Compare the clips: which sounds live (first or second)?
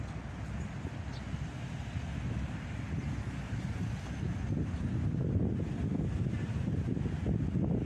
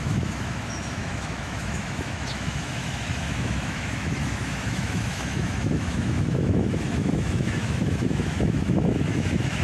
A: first